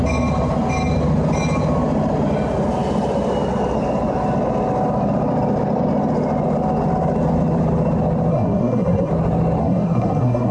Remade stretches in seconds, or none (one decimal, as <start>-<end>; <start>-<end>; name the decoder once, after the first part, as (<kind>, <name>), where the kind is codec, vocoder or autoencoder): 8.3-9.1 (codec, SNAC); 9.6-10.5